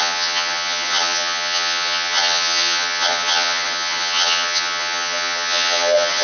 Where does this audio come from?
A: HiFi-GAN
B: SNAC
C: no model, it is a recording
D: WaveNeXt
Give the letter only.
A